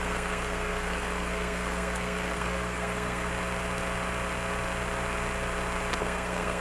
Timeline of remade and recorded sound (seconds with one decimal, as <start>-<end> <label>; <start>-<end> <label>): 0.0-3.3 remade; 3.3-6.0 recorded; 6.0-6.6 remade